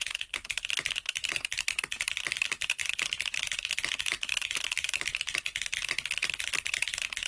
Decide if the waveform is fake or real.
real